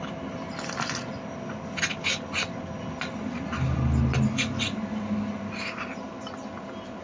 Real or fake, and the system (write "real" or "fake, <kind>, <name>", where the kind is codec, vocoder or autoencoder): real